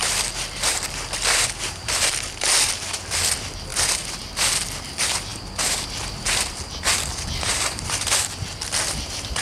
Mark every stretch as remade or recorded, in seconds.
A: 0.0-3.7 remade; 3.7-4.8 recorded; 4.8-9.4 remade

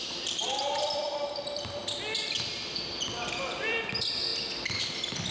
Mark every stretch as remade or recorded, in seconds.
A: 0.0-1.8 remade; 1.8-2.6 recorded; 2.6-4.3 remade; 4.3-4.8 recorded; 4.8-5.3 remade

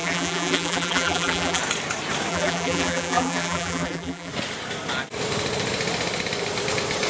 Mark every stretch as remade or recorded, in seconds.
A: 0.0-1.6 remade; 1.6-2.3 recorded; 2.3-4.3 remade; 4.3-7.1 recorded